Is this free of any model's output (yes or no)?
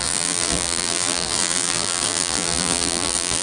no